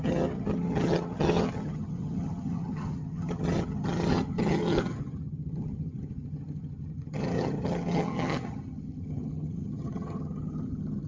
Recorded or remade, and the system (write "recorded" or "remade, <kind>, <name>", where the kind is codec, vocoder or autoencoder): remade, vocoder, HiFi-GAN